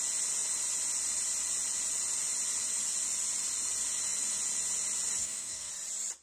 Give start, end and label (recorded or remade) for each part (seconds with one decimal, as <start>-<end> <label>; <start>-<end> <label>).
0.0-5.2 recorded; 5.2-5.7 remade; 5.7-6.2 recorded